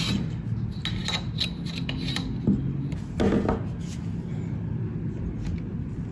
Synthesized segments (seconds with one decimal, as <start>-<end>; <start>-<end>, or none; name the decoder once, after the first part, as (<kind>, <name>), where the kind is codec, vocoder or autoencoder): none